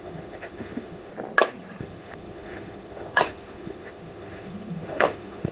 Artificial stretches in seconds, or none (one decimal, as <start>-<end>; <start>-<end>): 0.0-1.1; 1.8-5.5